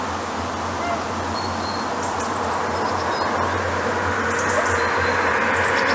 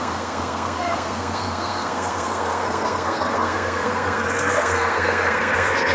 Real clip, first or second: first